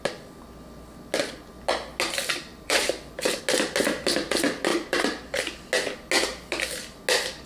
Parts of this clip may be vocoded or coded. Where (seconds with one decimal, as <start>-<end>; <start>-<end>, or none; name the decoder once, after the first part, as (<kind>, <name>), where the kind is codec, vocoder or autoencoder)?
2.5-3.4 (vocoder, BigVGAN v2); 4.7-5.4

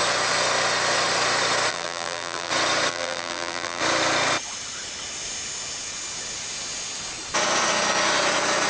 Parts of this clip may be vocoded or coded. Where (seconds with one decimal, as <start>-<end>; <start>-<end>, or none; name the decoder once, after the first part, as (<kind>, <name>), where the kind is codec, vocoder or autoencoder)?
1.7-2.5 (vocoder, BigVGAN v2); 2.9-3.8

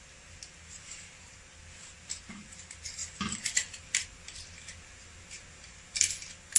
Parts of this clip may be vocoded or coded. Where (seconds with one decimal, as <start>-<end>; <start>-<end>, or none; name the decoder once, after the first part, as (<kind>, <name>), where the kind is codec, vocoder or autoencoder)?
none

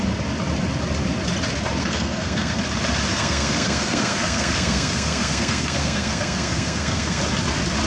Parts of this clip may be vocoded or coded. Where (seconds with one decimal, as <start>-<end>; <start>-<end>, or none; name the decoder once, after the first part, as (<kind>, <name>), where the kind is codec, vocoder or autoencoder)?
1.8-2.6 (codec, SNAC); 3.1-7.2

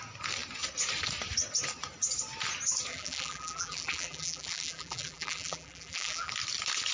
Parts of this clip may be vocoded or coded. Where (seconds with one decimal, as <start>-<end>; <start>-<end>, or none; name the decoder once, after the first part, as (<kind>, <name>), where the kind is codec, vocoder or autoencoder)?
2.9-6.3 (vocoder, BigVGAN v2)